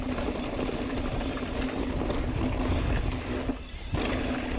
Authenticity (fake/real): real